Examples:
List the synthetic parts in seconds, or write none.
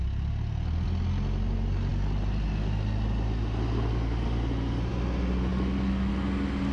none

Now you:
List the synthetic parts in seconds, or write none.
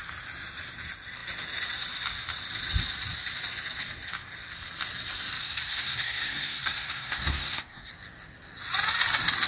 5.4-7.9 (codec, SNAC)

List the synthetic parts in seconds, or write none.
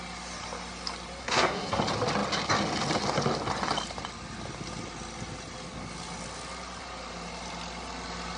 1.2-1.8 (codec, SNAC)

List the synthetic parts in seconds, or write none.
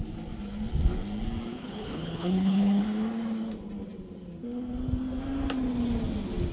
1.5-2.8 (codec, HILCodec)